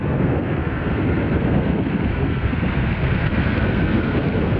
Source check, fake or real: fake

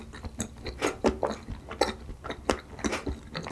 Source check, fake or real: real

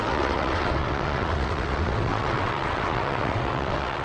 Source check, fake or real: fake